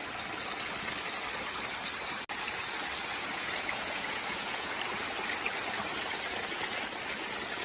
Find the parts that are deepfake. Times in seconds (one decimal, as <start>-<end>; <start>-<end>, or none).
3.1-4.7